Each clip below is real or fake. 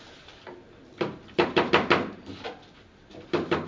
fake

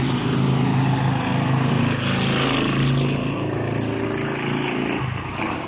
real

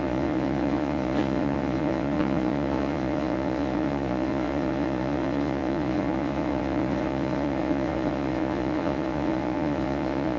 fake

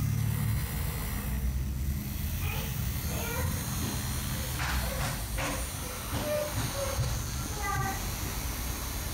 real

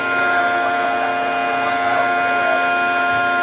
real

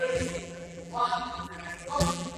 fake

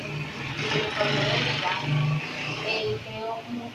real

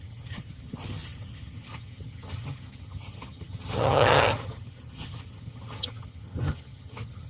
fake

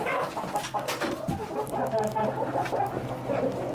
real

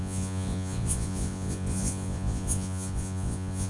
fake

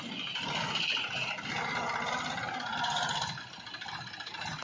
real